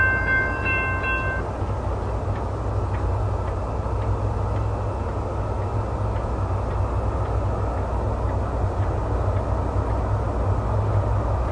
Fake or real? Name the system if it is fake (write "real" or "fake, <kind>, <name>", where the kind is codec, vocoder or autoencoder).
real